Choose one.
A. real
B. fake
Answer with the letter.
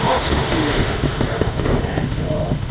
B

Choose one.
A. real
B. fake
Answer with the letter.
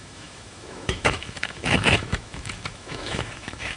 B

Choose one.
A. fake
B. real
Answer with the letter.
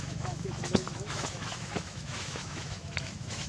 A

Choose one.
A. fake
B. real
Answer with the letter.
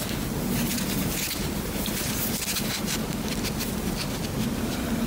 B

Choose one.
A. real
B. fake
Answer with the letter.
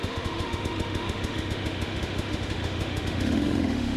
B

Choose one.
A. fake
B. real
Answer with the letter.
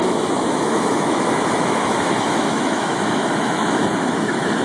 A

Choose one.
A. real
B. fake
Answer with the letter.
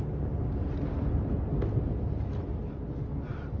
A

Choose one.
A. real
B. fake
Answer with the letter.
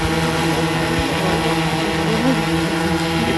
A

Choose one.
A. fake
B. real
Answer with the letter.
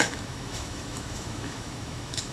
A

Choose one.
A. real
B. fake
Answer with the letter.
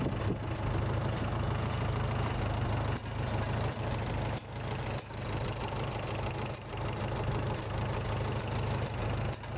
A